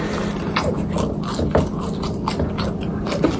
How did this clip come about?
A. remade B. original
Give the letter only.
B